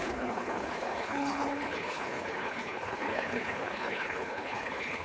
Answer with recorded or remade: remade